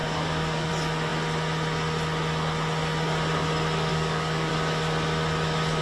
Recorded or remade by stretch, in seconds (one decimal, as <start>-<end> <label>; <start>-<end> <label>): 0.0-0.7 remade; 0.7-3.9 recorded; 3.9-4.5 remade; 4.5-5.8 recorded